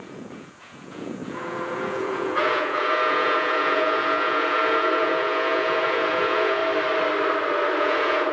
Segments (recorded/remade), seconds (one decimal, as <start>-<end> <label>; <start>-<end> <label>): 0.0-6.6 remade; 6.6-7.8 recorded; 7.8-8.3 remade